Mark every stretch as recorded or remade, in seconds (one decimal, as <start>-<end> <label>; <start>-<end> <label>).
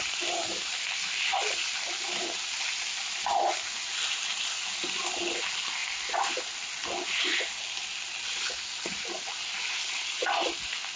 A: 0.0-11.0 recorded